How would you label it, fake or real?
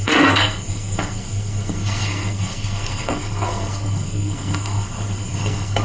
fake